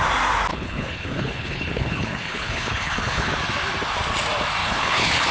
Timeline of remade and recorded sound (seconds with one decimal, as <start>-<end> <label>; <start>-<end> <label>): 0.0-0.5 recorded; 0.5-3.3 remade; 3.3-4.6 recorded; 4.6-5.3 remade